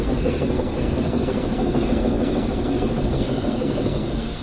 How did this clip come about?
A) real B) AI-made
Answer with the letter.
B